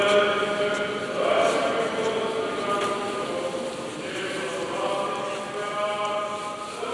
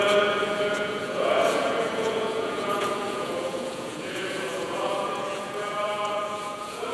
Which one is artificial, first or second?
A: second